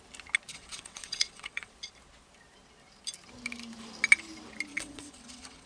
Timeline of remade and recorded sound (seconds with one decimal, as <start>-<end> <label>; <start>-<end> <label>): 0.0-0.5 recorded; 0.5-1.7 remade; 1.7-4.7 recorded; 4.7-5.7 remade